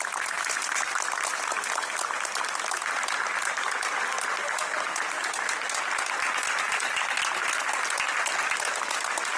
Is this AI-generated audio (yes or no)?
no